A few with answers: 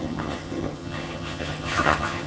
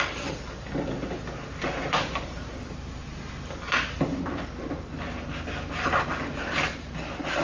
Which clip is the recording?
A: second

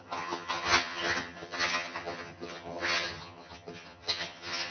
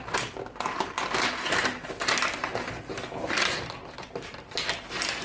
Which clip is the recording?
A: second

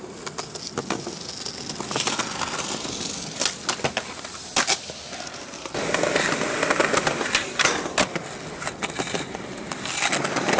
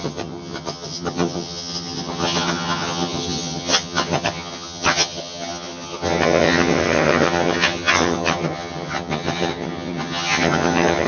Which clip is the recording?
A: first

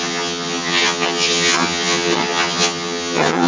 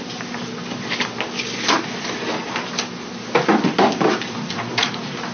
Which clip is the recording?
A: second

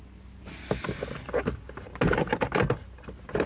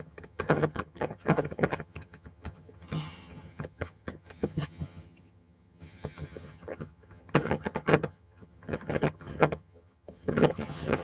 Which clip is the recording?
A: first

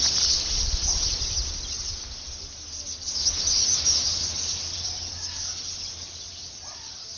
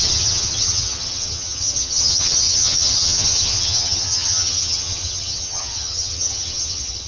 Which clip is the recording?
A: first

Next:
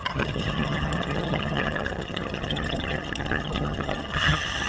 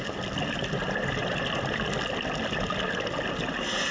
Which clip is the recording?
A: second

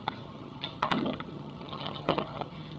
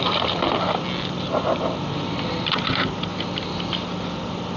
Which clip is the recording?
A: second